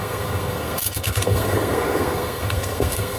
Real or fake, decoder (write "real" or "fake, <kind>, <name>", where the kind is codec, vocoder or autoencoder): fake, codec, SNAC